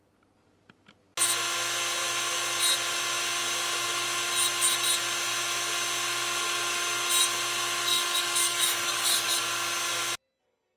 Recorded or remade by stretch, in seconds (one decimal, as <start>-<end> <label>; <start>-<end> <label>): 0.0-7.9 recorded; 7.9-9.4 remade; 9.4-10.8 recorded